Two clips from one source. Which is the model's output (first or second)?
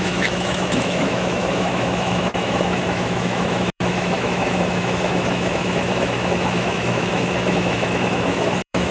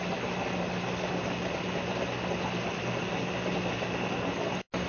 first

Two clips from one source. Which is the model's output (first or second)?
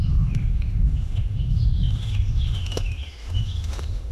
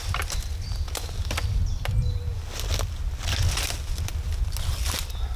first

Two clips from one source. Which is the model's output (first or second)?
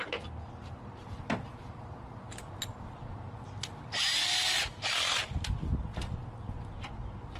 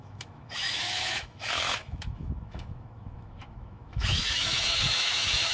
second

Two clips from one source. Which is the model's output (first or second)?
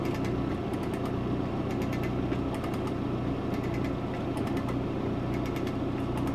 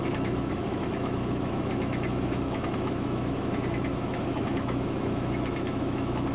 second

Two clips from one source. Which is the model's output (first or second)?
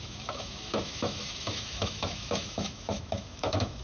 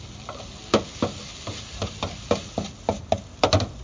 first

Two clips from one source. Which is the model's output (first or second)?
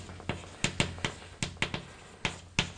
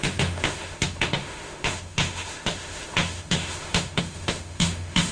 second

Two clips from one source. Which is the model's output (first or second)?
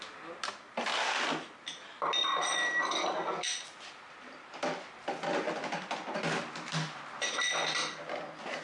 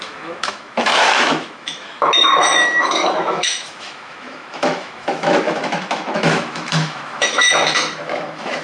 second